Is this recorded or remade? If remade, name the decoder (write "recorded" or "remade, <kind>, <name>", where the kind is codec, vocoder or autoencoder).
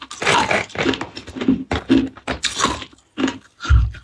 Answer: recorded